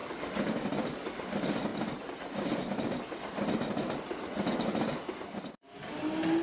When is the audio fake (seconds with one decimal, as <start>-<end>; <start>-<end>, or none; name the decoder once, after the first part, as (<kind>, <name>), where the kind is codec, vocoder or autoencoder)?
none